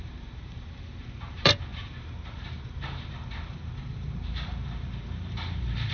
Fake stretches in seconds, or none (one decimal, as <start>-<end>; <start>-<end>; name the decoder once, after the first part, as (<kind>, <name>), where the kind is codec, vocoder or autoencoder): 0.0-5.9 (vocoder, BigVGAN v2)